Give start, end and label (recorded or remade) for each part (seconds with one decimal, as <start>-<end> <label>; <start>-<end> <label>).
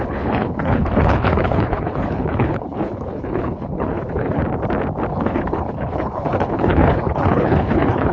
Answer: 0.0-4.4 remade; 4.4-5.1 recorded; 5.1-8.1 remade